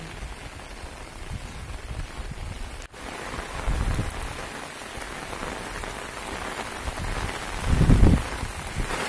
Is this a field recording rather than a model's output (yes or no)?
yes